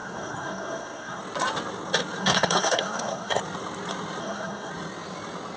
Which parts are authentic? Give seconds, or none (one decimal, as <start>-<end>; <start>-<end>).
1.2-2.2; 3.4-4.2; 4.7-5.6